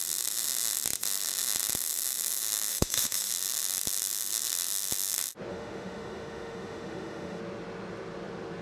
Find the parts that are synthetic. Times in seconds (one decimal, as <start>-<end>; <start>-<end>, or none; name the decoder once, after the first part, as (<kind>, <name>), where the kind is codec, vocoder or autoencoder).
2.7-3.3 (autoencoder, DAC-VAE); 5.5-7.4